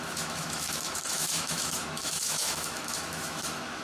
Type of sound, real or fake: fake